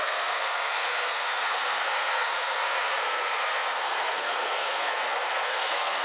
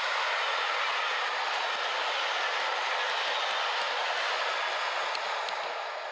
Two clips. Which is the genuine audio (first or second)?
second